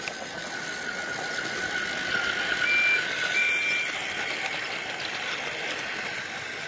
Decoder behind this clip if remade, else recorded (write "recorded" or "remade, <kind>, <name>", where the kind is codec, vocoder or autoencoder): recorded